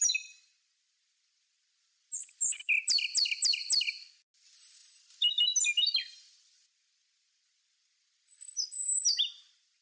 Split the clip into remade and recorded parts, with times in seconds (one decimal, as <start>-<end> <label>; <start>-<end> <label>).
0.0-9.8 recorded

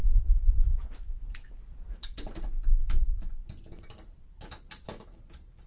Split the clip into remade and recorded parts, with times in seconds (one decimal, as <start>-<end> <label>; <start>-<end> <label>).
0.0-5.7 recorded

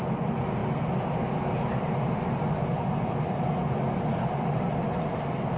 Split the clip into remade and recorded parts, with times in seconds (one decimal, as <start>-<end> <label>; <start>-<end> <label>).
0.0-5.6 recorded

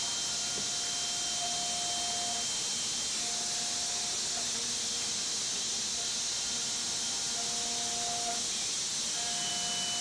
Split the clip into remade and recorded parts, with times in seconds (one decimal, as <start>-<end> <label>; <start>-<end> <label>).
0.0-10.0 recorded